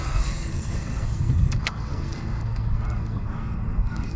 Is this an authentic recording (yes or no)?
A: no